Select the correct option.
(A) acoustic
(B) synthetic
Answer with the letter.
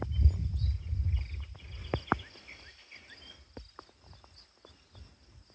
A